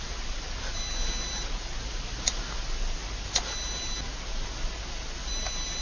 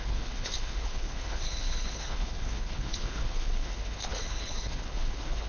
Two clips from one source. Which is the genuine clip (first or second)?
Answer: first